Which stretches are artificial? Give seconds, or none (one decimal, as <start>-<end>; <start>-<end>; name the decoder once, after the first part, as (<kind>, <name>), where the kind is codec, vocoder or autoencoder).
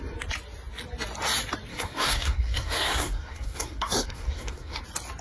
1.7-4.8 (codec, SNAC)